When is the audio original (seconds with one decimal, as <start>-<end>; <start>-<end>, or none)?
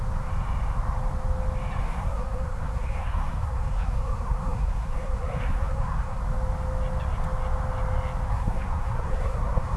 0.0-1.8; 6.2-8.3